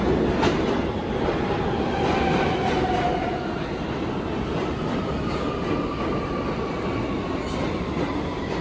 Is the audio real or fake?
real